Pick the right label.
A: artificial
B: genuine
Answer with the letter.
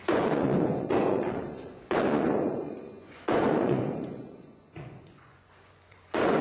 A